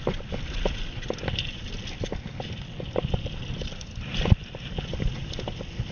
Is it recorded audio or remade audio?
recorded